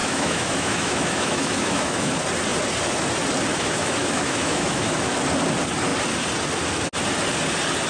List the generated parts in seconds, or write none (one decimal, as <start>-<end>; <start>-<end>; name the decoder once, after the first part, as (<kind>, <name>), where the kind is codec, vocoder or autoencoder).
0.0-2.1 (autoencoder, DAC-VAE); 3.5-5.1